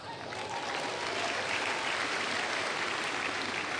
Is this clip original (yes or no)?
yes